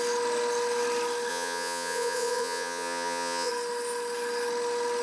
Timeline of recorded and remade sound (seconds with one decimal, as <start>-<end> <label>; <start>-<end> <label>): 0.0-1.3 recorded; 1.3-3.5 remade; 3.5-5.0 recorded